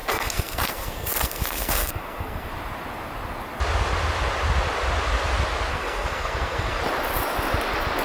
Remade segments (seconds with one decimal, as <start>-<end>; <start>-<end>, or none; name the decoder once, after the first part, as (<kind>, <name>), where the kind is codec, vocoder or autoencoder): 0.0-2.5 (codec, SNAC); 5.7-6.8